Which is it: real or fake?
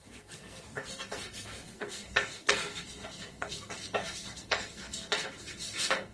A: fake